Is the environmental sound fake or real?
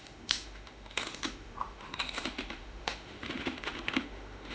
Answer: fake